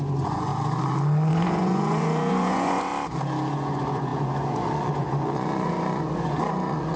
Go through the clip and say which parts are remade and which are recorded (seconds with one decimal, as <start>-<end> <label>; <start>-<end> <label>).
0.0-0.5 remade; 0.5-1.3 recorded; 1.3-2.9 remade; 2.9-3.5 recorded; 3.5-7.0 remade